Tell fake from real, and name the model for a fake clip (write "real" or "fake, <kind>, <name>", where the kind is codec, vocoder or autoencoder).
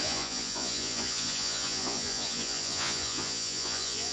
fake, vocoder, Vocos